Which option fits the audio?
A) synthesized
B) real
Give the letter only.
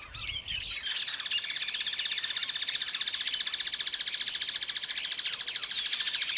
B